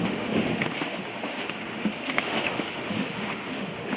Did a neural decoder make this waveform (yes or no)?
yes